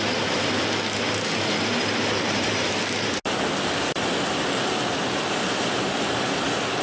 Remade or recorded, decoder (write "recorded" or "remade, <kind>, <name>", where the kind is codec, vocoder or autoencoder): recorded